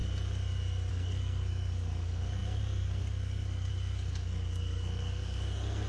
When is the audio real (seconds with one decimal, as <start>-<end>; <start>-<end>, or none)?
0.0-0.9